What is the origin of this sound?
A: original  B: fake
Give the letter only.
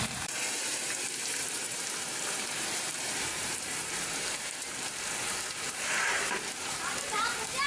B